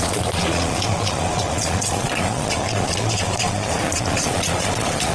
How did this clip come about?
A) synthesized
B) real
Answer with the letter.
A